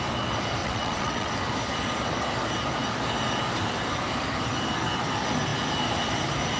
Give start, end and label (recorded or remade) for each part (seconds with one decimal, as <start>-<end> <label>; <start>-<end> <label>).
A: 0.0-0.6 recorded; 0.6-1.3 remade; 1.3-6.6 recorded